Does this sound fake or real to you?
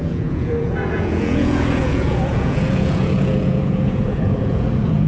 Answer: fake